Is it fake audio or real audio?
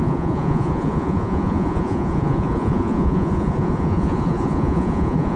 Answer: fake